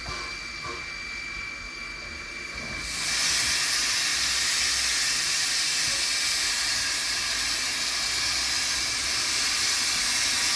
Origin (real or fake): real